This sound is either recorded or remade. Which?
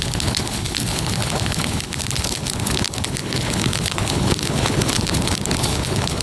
remade